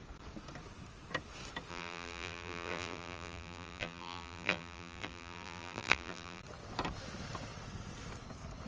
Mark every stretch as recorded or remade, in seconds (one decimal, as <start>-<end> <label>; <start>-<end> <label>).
0.0-1.7 recorded; 1.7-6.4 remade; 6.4-8.7 recorded